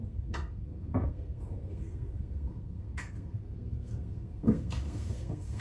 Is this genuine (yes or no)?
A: no